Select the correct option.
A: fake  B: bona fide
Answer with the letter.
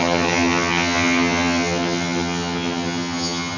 A